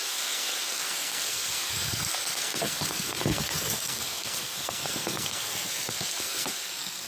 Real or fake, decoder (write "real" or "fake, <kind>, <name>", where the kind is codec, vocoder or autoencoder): fake, codec, SNAC